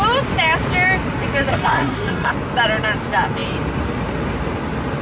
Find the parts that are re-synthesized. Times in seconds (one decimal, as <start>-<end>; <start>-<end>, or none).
1.5-2.3